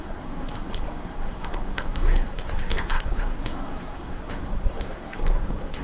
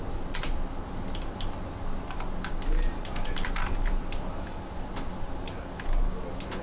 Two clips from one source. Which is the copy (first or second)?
first